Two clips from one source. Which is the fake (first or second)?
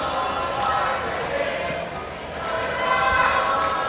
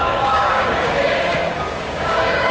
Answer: second